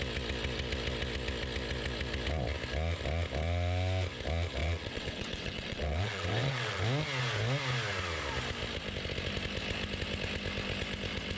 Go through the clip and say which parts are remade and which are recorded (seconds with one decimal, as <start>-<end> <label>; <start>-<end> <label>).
0.0-4.6 recorded; 4.6-6.8 remade; 6.8-11.4 recorded

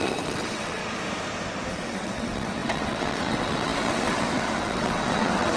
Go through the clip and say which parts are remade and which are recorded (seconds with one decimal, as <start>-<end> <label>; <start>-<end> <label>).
0.0-0.8 remade; 0.8-1.7 recorded; 1.7-5.6 remade

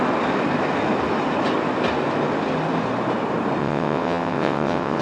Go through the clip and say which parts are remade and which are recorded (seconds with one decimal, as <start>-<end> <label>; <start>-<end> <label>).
0.0-3.6 recorded; 3.6-5.0 remade

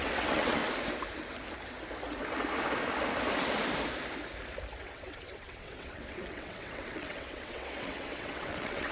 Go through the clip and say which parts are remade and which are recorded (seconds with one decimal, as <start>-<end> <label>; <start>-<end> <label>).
0.0-0.6 remade; 0.6-4.8 recorded; 4.8-8.9 remade

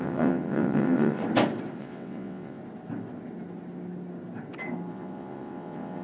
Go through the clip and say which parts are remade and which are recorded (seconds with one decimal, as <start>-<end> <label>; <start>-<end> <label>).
0.0-1.2 remade; 1.2-1.8 recorded; 1.8-2.6 remade; 2.6-4.9 recorded; 4.9-6.0 remade